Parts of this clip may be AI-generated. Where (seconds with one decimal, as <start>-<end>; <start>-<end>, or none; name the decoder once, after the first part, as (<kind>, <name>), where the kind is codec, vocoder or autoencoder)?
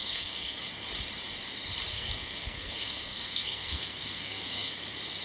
0.0-0.6 (codec, SNAC); 1.9-4.7